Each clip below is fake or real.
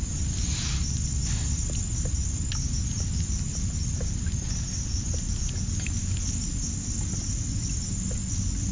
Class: real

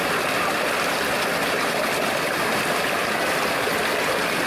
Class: real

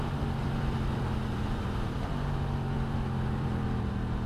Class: fake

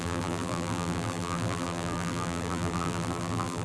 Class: fake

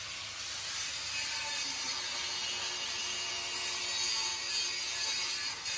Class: real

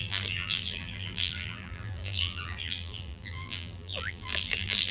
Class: fake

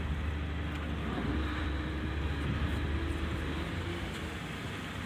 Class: fake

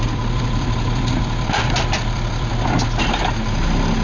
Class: fake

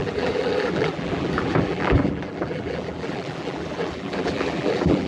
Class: fake